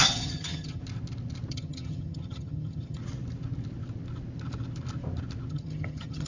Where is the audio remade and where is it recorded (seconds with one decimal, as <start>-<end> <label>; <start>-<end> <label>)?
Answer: 0.0-0.8 remade; 0.8-1.5 recorded; 1.5-3.0 remade; 3.0-5.5 recorded; 5.5-6.3 remade